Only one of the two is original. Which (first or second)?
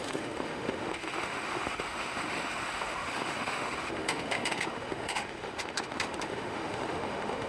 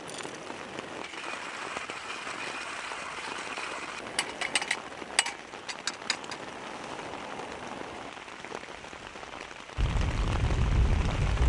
second